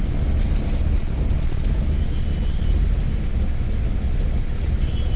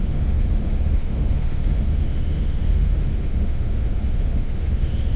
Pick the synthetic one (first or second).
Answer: second